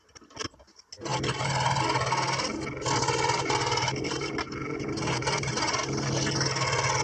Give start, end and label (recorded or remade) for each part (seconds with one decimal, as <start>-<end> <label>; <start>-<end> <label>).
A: 0.0-1.1 recorded; 1.1-1.8 remade; 1.8-3.0 recorded; 3.0-5.8 remade; 5.8-7.0 recorded